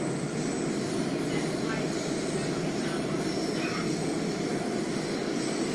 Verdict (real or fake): real